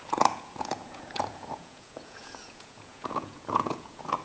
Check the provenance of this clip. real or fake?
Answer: fake